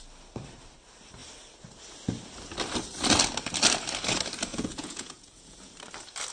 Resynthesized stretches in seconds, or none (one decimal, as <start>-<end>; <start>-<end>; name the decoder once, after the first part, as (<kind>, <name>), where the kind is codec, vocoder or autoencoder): 4.5-5.7 (vocoder, Vocos)